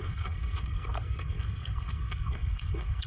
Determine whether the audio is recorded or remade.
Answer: remade